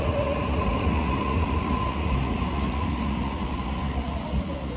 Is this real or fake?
fake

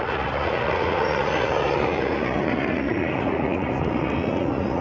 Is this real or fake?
fake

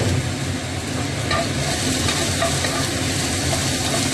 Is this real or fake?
real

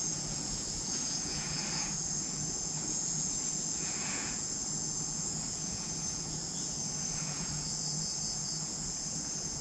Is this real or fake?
fake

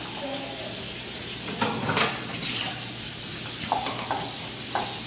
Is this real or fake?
real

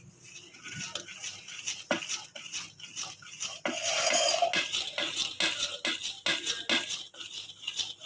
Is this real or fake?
real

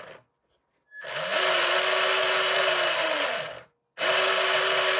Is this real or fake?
real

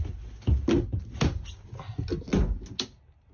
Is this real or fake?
real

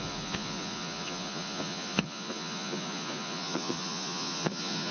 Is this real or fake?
fake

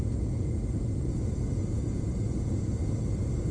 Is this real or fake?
fake